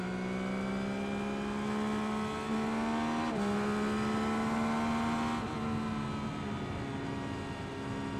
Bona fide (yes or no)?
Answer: yes